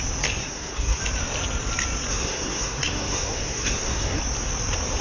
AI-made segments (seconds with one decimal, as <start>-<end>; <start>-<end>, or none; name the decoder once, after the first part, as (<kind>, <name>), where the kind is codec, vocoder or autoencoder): 0.4-1.0 (codec, SNAC); 2.1-4.2